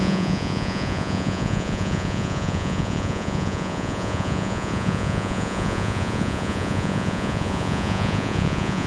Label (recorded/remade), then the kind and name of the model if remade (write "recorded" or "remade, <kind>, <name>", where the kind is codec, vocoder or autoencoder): remade, vocoder, Vocos